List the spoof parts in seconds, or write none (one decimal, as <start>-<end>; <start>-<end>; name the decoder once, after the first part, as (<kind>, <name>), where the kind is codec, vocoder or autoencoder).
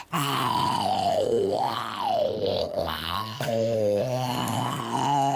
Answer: 1.1-1.8 (codec, SNAC); 2.6-4.8